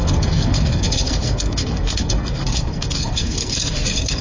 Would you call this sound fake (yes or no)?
yes